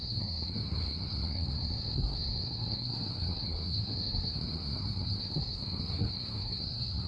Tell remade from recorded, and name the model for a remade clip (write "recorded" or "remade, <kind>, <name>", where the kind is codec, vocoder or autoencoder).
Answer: remade, codec, SNAC